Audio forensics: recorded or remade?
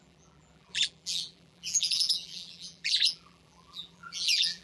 remade